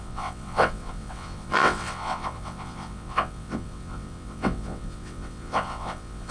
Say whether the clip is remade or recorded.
remade